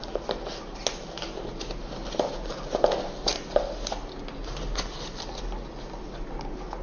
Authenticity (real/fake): real